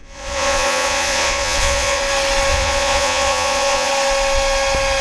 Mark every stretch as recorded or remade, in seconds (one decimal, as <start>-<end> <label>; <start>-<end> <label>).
0.0-2.0 remade; 2.0-2.5 recorded; 2.5-3.9 remade; 3.9-5.0 recorded